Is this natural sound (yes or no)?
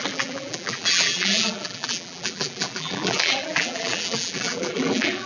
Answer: no